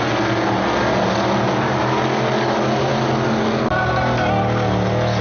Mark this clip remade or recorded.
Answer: recorded